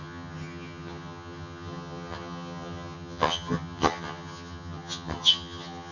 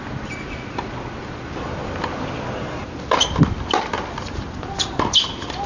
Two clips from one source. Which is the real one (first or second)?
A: second